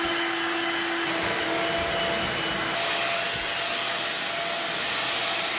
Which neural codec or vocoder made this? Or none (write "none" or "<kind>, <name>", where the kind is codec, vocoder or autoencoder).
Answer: none